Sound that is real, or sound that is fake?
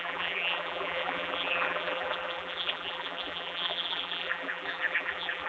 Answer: fake